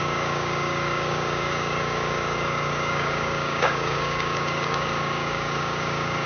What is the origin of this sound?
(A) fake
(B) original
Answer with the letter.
A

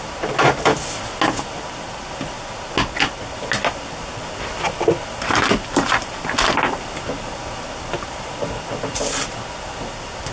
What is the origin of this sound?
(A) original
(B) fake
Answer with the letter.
A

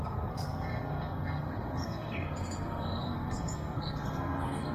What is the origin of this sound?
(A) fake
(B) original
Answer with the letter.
A